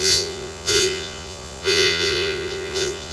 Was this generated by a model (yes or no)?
yes